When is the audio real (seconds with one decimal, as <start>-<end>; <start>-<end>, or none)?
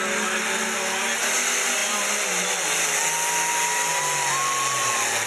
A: 0.0-5.3